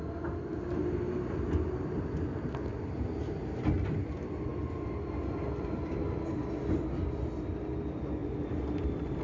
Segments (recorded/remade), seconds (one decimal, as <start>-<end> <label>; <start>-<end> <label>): 0.0-2.7 recorded; 2.7-3.7 remade; 3.7-8.2 recorded; 8.2-9.2 remade